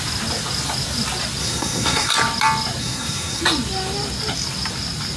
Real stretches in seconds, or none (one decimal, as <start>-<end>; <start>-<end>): 0.0-1.4; 2.1-2.8; 3.4-5.2